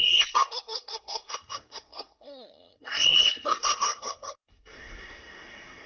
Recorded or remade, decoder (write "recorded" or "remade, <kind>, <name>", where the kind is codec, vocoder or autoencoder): remade, codec, SNAC